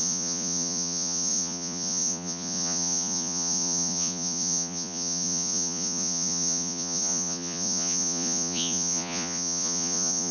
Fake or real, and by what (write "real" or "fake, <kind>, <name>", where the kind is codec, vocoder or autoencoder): fake, vocoder, Vocos